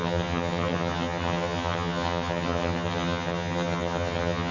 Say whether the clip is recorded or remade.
remade